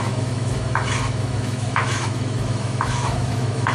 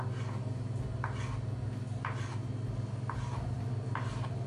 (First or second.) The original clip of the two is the second